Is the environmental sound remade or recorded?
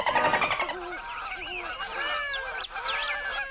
recorded